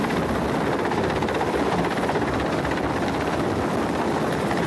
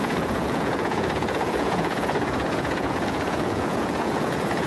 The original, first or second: first